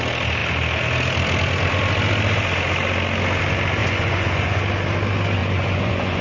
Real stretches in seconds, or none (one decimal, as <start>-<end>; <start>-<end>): 0.0-3.8; 4.6-5.4